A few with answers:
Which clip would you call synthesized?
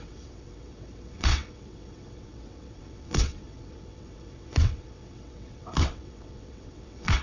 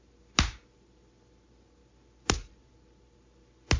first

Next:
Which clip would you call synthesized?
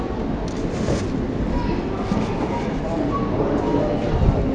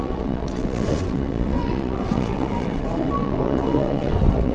second